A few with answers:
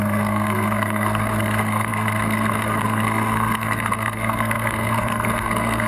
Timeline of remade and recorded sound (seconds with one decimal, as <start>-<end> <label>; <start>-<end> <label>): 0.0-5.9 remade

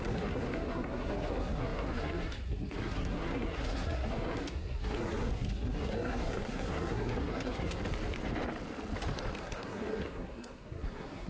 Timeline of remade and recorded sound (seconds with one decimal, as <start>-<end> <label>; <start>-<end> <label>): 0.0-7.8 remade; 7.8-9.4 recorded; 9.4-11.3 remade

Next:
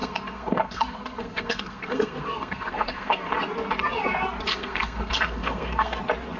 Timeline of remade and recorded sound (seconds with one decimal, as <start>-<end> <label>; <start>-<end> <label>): 0.0-3.3 remade; 3.3-4.5 recorded; 4.5-6.0 remade; 6.0-6.4 recorded

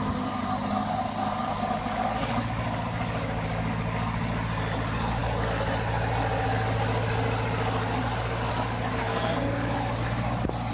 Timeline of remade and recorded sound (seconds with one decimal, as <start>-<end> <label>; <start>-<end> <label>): 0.0-9.0 recorded; 9.0-9.5 remade; 9.5-10.7 recorded

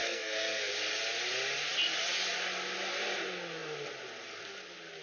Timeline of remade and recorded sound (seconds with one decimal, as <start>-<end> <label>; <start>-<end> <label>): 0.0-0.7 remade; 0.7-5.0 recorded

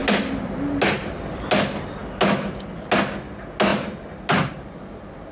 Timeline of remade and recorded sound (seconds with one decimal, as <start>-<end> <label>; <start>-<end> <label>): 0.0-5.3 recorded